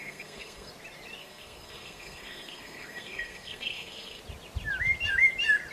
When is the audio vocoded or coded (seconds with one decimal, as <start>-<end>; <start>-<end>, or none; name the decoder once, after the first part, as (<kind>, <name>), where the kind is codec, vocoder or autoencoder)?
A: 0.0-0.7 (codec, SNAC); 1.2-4.2